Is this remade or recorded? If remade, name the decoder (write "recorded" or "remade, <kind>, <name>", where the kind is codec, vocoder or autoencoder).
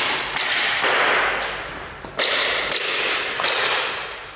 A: recorded